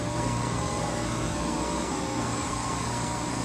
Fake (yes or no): yes